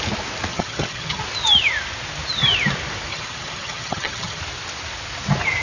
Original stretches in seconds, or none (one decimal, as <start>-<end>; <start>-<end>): 0.0-0.5; 1.2-3.1; 4.4-5.6